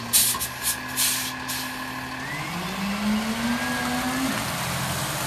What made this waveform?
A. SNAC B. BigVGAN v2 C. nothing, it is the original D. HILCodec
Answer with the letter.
C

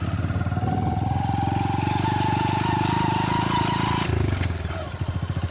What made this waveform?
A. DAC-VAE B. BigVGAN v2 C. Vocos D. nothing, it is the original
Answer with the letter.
D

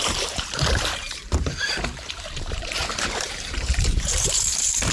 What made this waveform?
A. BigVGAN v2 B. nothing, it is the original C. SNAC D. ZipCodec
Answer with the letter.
A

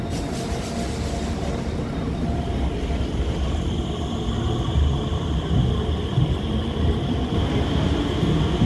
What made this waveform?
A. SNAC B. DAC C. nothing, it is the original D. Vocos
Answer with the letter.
C